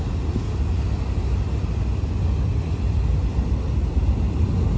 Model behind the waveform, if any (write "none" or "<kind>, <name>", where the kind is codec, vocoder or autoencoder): none